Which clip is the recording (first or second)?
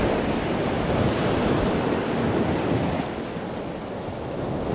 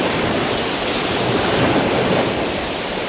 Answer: first